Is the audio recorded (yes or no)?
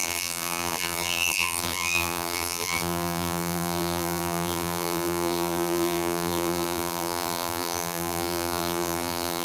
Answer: no